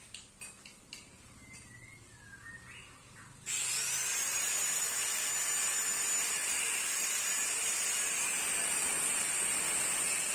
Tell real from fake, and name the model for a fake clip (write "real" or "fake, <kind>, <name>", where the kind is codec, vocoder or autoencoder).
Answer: real